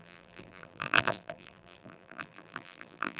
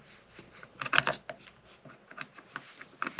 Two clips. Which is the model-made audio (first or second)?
first